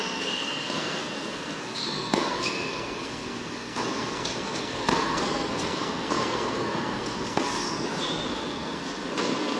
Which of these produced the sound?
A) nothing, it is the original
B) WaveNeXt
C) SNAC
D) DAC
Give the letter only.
C